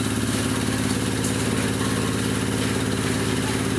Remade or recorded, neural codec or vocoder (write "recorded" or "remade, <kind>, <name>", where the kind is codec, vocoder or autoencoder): recorded